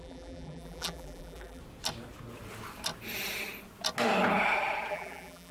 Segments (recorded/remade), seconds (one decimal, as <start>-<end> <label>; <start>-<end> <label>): 0.0-1.6 remade; 1.6-4.9 recorded; 4.9-5.5 remade

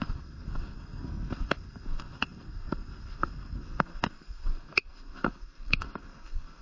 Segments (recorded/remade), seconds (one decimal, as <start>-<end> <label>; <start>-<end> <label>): 0.0-6.6 remade